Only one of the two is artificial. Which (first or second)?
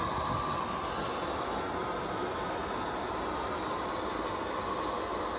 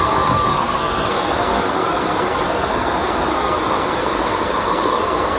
second